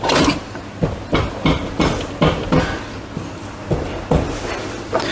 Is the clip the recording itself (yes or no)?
yes